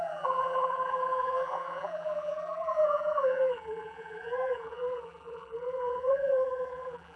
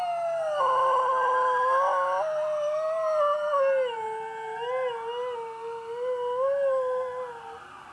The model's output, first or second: first